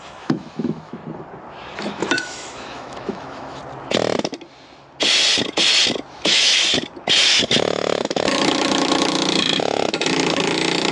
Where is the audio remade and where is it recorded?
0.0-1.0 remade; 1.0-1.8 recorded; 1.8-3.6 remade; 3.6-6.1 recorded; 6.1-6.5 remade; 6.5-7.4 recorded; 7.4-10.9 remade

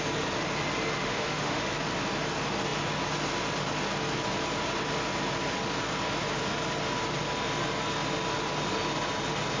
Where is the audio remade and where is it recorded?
0.0-1.0 recorded; 1.0-1.6 remade; 1.6-9.6 recorded

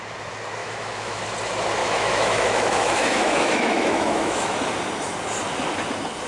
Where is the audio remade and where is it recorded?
0.0-0.6 recorded; 0.6-1.2 remade; 1.2-1.8 recorded; 1.8-4.7 remade; 4.7-6.3 recorded

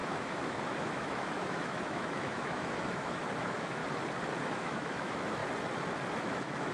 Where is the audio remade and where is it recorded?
0.0-3.8 remade; 3.8-4.4 recorded; 4.4-5.4 remade; 5.4-6.2 recorded; 6.2-6.7 remade

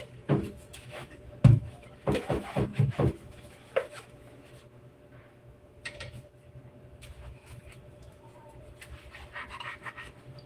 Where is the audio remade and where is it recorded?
0.0-8.3 remade; 8.3-9.5 recorded; 9.5-10.5 remade

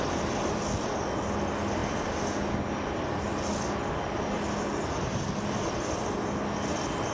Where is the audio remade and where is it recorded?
0.0-7.1 recorded

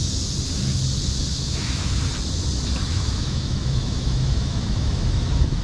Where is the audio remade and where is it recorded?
0.0-1.3 recorded; 1.3-2.0 remade; 2.0-2.9 recorded; 2.9-5.6 remade